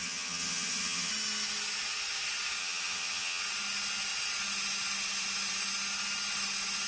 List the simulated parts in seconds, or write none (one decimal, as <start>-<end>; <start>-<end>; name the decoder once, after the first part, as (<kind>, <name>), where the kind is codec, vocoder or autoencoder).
0.0-1.1 (vocoder, HiFi-GAN); 2.6-3.4